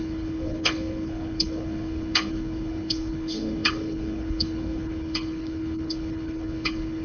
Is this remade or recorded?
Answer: remade